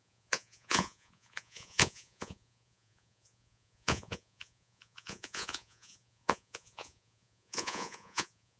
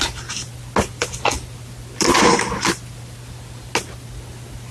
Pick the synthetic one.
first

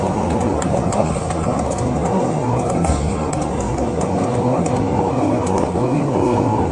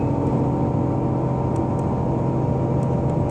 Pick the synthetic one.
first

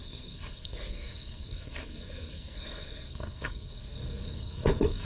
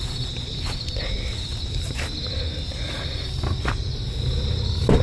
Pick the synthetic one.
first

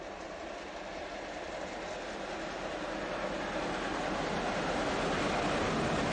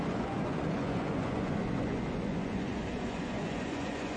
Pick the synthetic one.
second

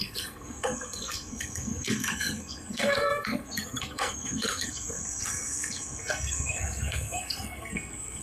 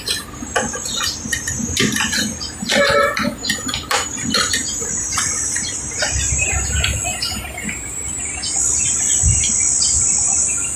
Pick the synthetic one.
first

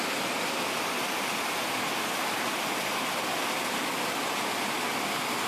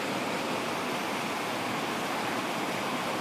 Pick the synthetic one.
second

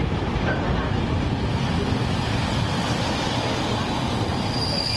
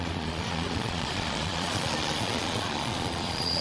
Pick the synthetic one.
second